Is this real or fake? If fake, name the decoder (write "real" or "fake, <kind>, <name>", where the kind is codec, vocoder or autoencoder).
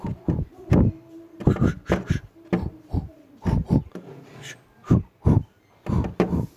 real